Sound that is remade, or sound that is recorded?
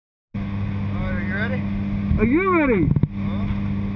recorded